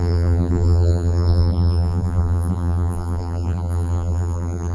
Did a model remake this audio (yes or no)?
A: yes